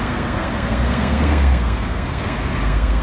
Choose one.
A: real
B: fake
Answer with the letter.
B